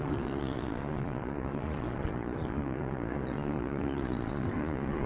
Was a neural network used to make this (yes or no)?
yes